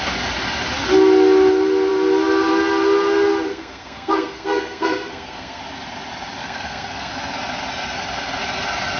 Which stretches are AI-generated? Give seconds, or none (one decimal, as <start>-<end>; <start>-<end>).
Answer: 3.5-5.6; 6.4-7.1